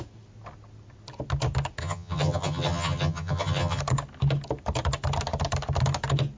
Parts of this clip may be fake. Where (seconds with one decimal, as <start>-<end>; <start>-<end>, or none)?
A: 1.8-3.8